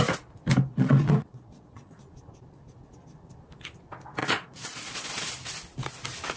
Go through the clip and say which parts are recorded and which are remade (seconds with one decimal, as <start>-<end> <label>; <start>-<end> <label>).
0.0-0.7 recorded; 0.7-2.0 remade; 2.0-4.2 recorded; 4.2-5.3 remade; 5.3-6.4 recorded